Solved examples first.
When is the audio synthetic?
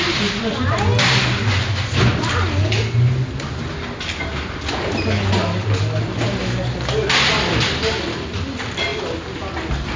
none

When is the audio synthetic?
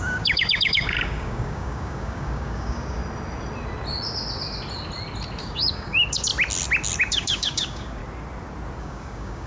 0.0-3.0 (codec, DAC); 5.4-6.3; 7.0-8.0; 8.8-9.5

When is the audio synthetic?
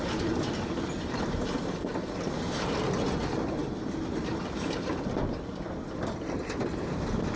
none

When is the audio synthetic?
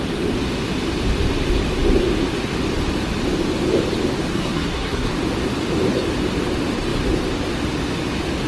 4.3-5.1 (codec, SNAC)